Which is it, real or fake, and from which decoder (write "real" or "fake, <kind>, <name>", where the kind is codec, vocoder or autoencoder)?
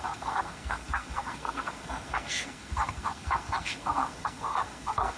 fake, codec, SNAC